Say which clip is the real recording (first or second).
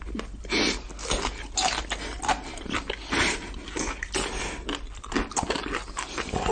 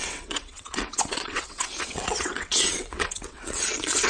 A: first